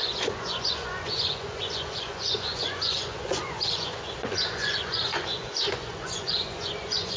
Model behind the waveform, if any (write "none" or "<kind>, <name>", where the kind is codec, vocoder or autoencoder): vocoder, Vocos